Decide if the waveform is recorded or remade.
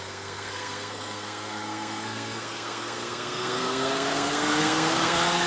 remade